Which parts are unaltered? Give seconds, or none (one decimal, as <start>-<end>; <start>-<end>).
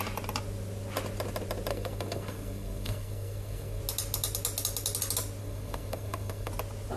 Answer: 0.0-1.7; 3.8-5.4; 6.5-7.0